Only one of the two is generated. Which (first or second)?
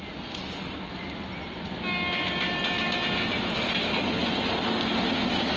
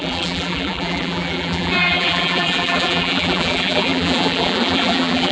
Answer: second